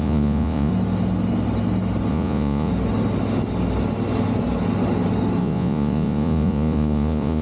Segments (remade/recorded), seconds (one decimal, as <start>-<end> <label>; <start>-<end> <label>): 0.0-0.7 remade; 0.7-2.1 recorded; 2.1-2.7 remade; 2.7-5.4 recorded; 5.4-7.4 remade